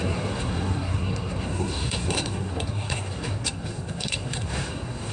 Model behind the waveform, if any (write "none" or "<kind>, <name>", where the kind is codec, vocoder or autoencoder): codec, SNAC